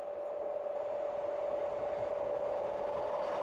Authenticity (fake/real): real